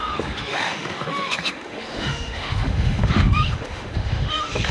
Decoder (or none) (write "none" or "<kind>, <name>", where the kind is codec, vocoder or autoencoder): autoencoder, DAC-VAE